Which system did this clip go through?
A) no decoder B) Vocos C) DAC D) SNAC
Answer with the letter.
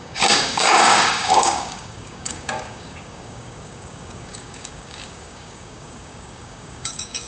C